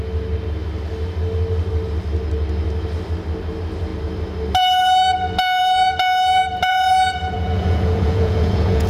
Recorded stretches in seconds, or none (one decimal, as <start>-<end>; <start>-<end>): 0.0-6.7